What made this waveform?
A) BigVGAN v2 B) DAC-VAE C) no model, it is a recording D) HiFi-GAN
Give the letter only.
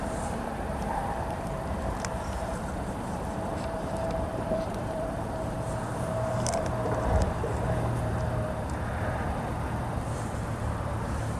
A